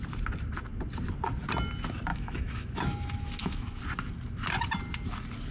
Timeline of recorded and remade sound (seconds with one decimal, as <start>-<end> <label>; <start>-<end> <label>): 0.0-2.1 recorded; 2.1-3.8 remade; 3.8-5.5 recorded